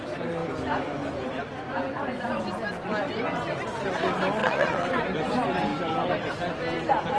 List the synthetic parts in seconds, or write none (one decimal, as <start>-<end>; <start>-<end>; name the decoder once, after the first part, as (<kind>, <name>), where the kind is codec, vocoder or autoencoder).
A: 4.4-5.0 (vocoder, WaveNeXt)